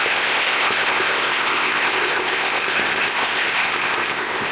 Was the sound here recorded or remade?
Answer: remade